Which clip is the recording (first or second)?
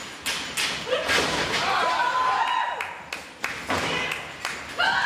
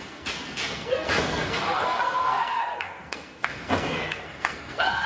first